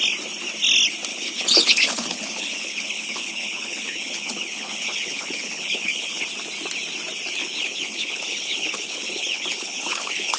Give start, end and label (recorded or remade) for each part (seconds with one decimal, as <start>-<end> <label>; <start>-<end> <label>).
0.0-1.1 recorded; 1.1-6.2 remade; 6.2-7.4 recorded; 7.4-10.4 remade